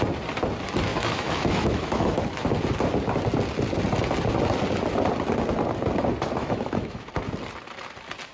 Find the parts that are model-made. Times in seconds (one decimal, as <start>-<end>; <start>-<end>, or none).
0.9-2.2; 6.4-7.1